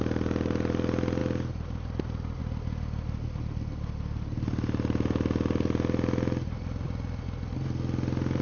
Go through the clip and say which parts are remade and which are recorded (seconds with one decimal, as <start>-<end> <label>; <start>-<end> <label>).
0.0-8.4 recorded